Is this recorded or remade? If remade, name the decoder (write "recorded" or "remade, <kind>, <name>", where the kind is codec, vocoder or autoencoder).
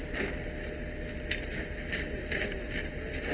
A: recorded